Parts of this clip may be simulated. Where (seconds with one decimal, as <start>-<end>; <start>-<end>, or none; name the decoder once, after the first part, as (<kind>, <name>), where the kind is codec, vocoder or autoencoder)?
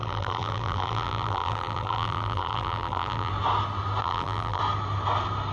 0.0-3.3 (vocoder, BigVGAN v2); 4.0-4.6